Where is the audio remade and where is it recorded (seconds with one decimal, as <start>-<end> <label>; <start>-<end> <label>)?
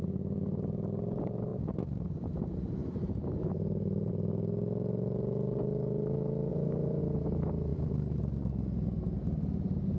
0.0-1.5 recorded; 1.5-4.1 remade; 4.1-6.5 recorded; 6.5-7.0 remade; 7.0-7.7 recorded; 7.7-8.2 remade; 8.2-10.0 recorded